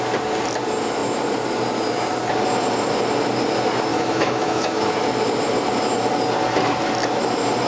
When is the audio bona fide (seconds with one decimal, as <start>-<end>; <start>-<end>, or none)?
0.0-3.9; 5.0-7.7